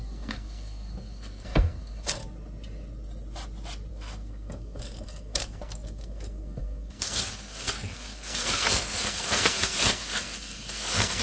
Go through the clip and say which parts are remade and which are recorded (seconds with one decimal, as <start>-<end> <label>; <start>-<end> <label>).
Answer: 0.0-2.2 remade; 2.2-3.9 recorded; 3.9-11.2 remade